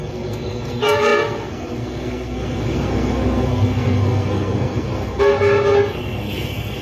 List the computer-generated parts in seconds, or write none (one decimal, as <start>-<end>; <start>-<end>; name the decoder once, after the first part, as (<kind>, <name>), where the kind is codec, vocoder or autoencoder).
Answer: 0.0-6.8 (codec, SNAC)